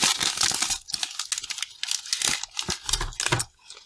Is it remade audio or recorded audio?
recorded